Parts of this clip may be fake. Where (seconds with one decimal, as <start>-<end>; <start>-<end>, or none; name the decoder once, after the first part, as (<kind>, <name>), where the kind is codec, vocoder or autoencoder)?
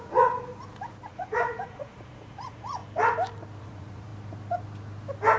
0.0-0.5 (vocoder, Vocos); 1.1-2.8; 3.6-4.1